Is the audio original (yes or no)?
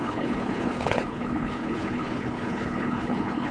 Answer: no